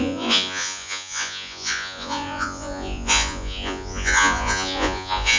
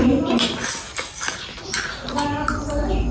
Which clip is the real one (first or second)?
second